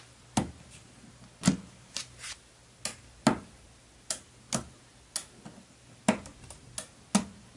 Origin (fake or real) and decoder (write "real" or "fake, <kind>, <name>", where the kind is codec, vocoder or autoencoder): real